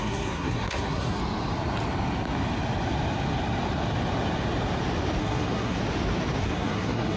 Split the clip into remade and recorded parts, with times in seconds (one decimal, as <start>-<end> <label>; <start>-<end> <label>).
0.0-1.2 remade; 1.2-5.2 recorded; 5.2-5.8 remade; 5.8-6.4 recorded; 6.4-7.2 remade